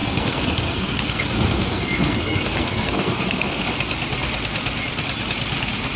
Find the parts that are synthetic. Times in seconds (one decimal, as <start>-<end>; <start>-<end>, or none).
0.0-3.6